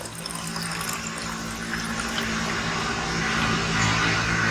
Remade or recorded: recorded